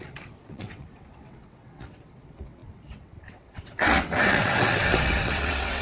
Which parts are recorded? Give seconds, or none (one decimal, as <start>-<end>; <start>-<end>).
none